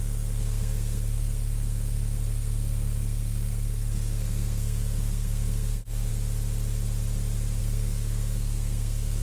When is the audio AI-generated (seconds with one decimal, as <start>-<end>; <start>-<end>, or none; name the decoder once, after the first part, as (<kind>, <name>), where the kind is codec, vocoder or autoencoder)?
0.0-6.1 (codec, SNAC); 7.6-9.2